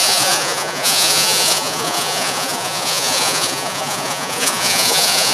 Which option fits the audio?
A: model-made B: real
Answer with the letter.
A